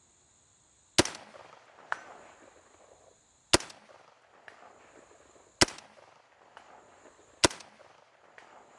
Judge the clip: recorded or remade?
recorded